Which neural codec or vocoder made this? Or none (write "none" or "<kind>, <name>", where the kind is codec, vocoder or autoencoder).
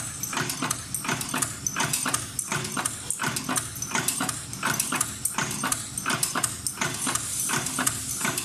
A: none